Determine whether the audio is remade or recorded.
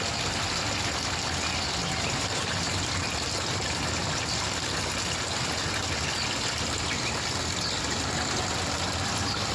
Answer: recorded